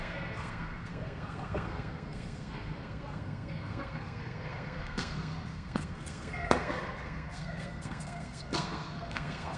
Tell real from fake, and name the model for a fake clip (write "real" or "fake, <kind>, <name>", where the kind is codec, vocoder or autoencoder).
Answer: fake, codec, SNAC